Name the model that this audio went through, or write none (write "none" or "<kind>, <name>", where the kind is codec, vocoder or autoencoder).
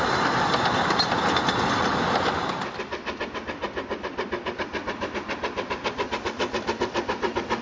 none